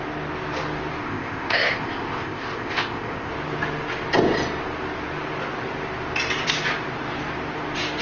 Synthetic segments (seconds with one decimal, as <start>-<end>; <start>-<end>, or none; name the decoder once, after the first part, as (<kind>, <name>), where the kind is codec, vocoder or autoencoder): 1.0-3.3 (codec, ZipCodec)